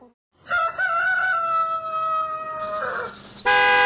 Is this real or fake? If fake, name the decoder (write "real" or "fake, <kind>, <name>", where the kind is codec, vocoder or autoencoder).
real